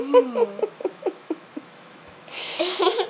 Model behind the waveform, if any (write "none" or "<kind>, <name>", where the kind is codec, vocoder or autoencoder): autoencoder, DAC-VAE